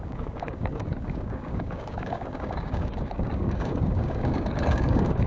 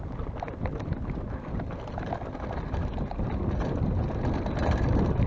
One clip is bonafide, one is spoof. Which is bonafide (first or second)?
second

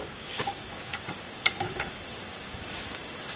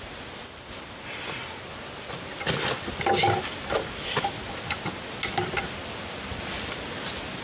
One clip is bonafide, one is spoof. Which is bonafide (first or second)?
second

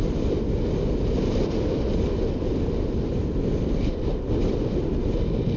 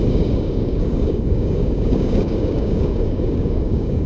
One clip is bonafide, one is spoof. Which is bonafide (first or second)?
first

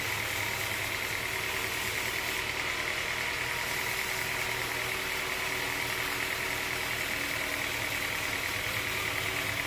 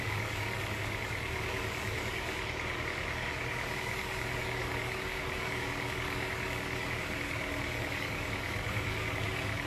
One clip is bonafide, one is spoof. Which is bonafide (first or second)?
first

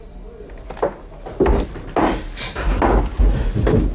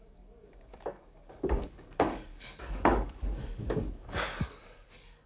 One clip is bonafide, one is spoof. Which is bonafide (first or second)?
first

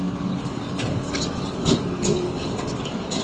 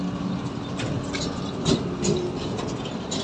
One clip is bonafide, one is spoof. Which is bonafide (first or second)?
second